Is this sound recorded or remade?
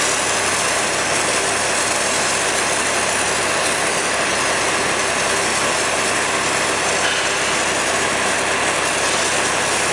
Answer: recorded